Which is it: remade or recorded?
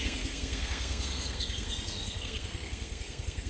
remade